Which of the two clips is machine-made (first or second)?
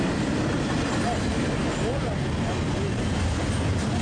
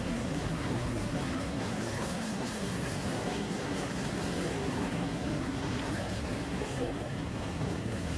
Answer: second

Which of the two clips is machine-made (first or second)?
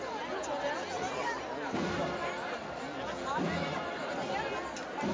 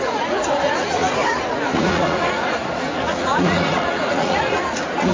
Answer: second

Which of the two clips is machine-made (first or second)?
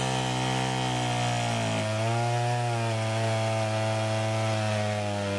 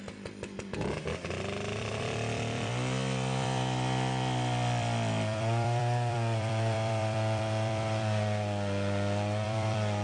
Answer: second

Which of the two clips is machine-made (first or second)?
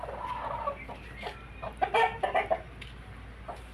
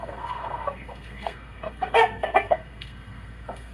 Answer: second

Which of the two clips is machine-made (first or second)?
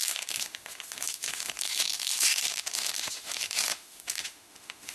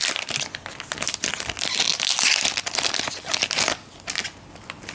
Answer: first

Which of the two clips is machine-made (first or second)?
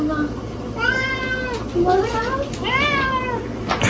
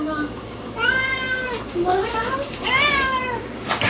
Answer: second